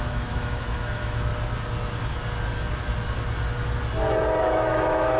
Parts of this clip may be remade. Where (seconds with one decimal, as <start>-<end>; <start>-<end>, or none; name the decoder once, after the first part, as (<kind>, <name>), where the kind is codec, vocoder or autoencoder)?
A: 0.0-1.3 (autoencoder, DAC-VAE); 4.4-5.2